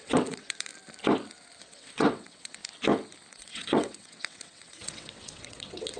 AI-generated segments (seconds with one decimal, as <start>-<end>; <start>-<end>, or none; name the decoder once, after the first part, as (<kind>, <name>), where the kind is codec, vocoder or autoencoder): 0.0-0.7 (vocoder, WaveNeXt); 1.6-2.6; 3.3-6.0